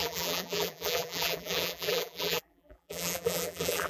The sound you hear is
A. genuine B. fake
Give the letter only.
B